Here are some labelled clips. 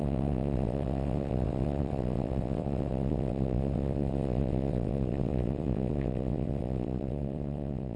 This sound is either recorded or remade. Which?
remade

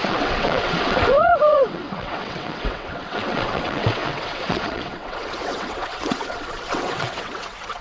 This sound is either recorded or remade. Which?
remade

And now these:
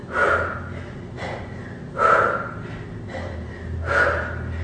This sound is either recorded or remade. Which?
recorded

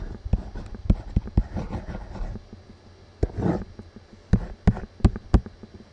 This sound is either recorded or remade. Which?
recorded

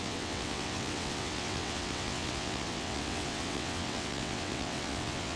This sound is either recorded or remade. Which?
remade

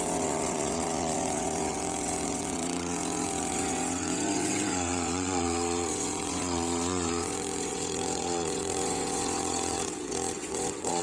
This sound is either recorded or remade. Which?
remade